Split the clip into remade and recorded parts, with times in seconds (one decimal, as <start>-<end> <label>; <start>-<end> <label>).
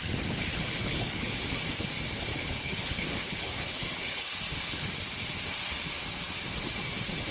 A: 0.0-0.5 recorded; 0.5-1.3 remade; 1.3-2.3 recorded; 2.3-4.9 remade; 4.9-7.3 recorded